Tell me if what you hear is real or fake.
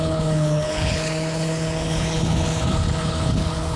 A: fake